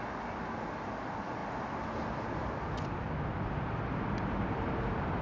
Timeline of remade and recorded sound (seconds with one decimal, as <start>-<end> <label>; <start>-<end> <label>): 0.0-5.2 recorded